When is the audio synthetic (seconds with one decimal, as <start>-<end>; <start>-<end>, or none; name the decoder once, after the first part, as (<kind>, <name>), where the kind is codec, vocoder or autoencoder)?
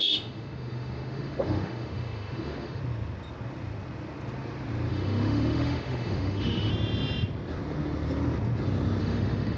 0.0-2.8 (autoencoder, DAC-VAE); 4.9-6.7; 9.0-9.6